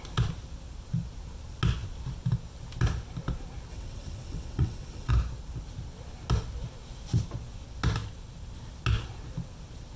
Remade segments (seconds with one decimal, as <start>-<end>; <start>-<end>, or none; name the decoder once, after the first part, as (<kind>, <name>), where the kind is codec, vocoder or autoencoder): 3.7-5.1 (vocoder, WaveNeXt)

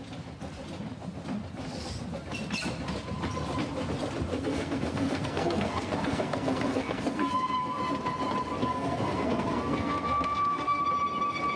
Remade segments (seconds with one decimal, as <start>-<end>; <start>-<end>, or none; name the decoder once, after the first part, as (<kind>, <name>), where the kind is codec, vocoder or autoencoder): 4.3-7.8 (codec, SNAC); 8.6-10.8

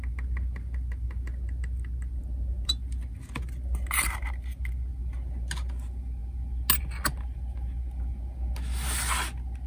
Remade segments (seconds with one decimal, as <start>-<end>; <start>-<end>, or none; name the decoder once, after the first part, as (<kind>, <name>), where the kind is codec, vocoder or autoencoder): none

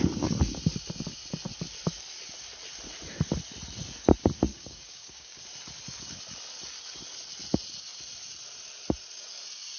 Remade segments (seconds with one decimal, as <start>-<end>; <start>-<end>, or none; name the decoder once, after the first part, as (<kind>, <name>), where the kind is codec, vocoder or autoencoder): 4.5-5.4 (codec, DAC)

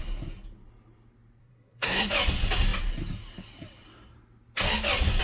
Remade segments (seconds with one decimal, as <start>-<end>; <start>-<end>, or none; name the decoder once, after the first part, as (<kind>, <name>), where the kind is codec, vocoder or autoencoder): 1.4-2.1 (codec, SNAC)